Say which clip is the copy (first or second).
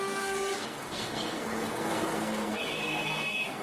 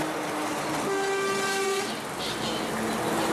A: first